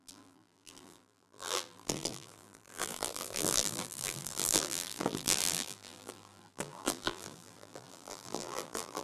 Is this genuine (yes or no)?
no